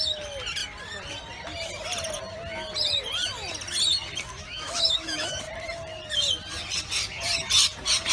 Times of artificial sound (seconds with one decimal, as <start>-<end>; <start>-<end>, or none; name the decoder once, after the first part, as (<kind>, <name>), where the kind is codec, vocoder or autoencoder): 4.3-5.4 (autoencoder, DAC-VAE)